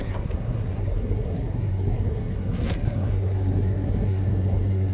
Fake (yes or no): yes